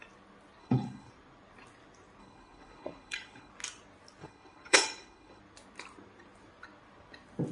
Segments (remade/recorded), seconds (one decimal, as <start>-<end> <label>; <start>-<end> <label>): 0.0-0.6 recorded; 0.6-1.1 remade; 1.1-2.2 recorded; 2.2-3.5 remade; 3.5-4.2 recorded; 4.2-5.4 remade; 5.4-7.5 recorded